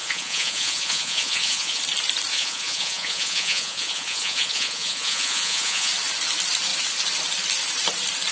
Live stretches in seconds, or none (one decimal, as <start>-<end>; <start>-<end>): 1.8-2.3; 5.9-8.3